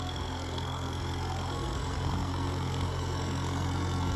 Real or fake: fake